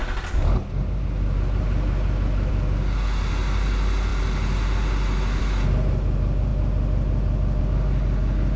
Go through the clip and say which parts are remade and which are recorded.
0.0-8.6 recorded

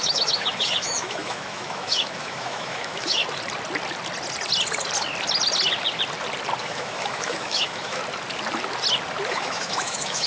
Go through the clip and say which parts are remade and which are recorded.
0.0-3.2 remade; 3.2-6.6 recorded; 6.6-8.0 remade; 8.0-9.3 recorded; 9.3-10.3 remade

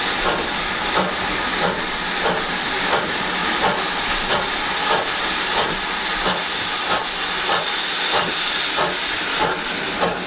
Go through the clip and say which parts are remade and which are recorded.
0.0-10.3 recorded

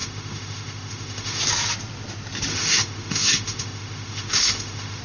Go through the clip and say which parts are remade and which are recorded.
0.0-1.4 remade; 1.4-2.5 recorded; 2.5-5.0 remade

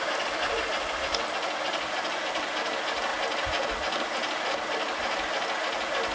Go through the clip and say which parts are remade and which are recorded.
0.0-6.1 recorded